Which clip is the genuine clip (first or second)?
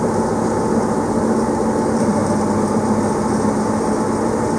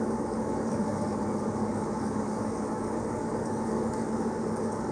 first